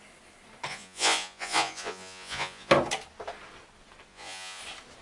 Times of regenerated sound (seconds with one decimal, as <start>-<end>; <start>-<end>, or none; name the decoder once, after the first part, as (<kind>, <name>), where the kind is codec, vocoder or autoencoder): 0.7-2.7 (vocoder, Vocos); 4.1-4.6